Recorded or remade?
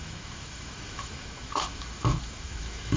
remade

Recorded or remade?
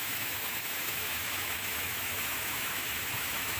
remade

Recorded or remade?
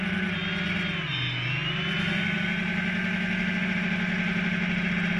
recorded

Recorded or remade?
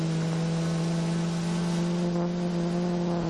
recorded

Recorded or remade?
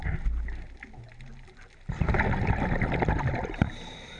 recorded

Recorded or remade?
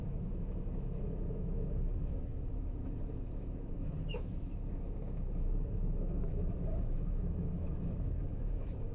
remade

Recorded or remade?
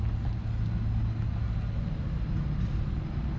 recorded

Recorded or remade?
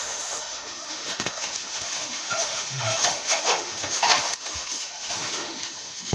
remade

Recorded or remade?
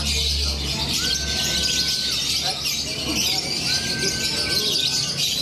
recorded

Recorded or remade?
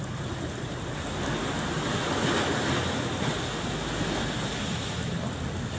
recorded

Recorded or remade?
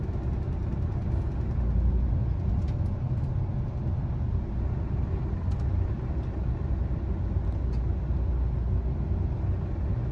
recorded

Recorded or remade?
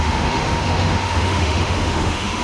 remade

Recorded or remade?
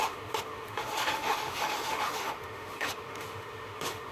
remade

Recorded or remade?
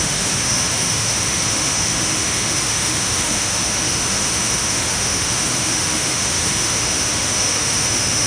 remade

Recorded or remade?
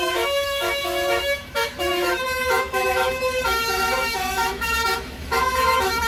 remade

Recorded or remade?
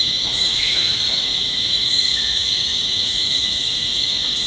remade